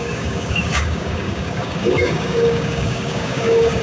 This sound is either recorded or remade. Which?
remade